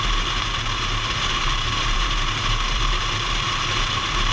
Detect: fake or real fake